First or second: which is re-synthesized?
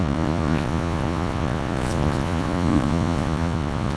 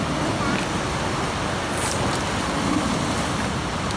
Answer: first